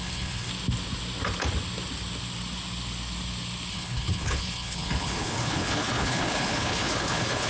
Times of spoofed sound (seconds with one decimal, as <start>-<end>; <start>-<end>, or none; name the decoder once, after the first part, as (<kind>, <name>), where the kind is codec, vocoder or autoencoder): 0.0-0.5 (codec, HILCodec); 3.7-7.5